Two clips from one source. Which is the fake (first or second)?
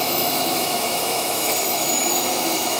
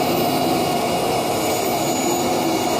first